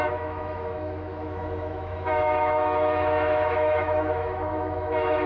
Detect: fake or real fake